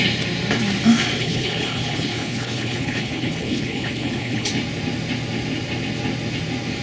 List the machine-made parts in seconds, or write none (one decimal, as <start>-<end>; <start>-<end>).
1.2-4.5